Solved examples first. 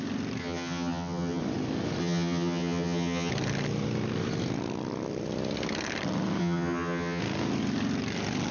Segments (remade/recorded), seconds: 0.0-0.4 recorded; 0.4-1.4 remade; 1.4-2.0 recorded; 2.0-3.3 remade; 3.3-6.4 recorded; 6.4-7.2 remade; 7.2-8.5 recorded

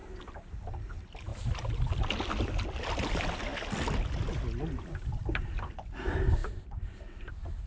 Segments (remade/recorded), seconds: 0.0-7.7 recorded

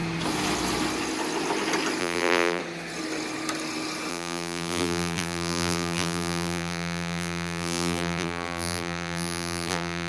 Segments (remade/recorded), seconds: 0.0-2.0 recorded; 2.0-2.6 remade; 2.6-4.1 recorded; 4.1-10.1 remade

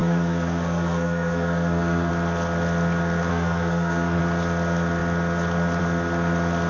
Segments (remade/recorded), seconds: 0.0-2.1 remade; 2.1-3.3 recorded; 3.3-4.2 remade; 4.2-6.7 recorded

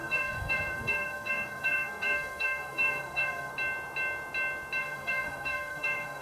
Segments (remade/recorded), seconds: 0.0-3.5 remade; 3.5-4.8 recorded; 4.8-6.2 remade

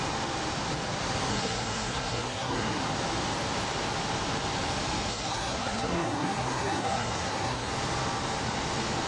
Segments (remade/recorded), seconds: 0.0-1.3 recorded; 1.3-2.8 remade; 2.8-5.1 recorded; 5.1-7.7 remade; 7.7-9.1 recorded

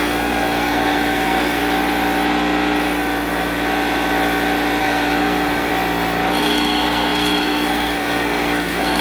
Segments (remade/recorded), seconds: 0.0-1.6 remade; 1.6-4.8 recorded; 4.8-5.7 remade; 5.7-6.4 recorded; 6.4-9.0 remade